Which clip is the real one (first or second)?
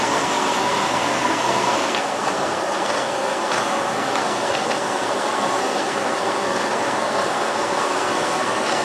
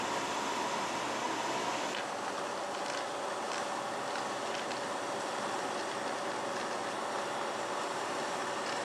second